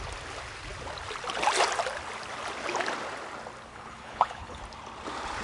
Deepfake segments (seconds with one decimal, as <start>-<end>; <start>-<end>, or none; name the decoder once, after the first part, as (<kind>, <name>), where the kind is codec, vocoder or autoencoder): 3.7-4.6 (codec, HILCodec)